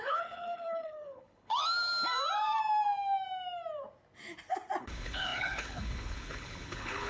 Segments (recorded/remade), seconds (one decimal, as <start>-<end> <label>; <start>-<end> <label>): 0.0-1.5 remade; 1.5-4.8 recorded; 4.8-7.1 remade